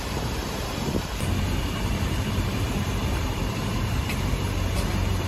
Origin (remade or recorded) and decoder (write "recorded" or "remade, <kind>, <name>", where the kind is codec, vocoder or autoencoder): remade, vocoder, BigVGAN v2